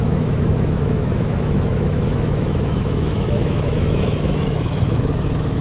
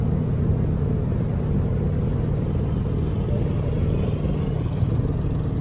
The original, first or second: second